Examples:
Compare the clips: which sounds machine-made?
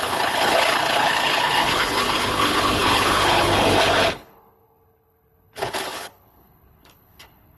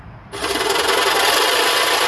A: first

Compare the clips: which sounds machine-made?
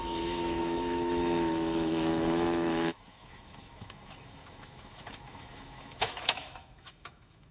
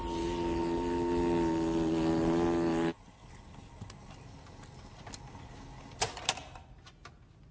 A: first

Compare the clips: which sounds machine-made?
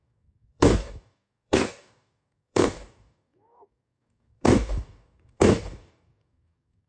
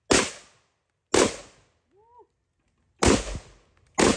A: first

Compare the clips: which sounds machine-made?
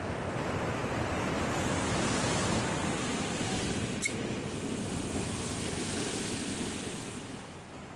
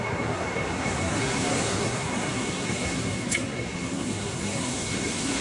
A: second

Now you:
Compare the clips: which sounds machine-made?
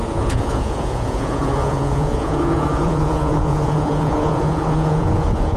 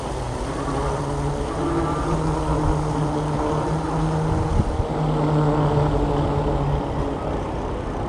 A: first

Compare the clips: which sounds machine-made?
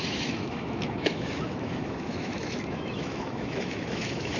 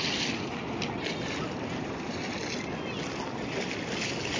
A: first